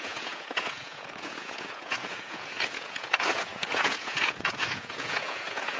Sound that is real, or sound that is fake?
fake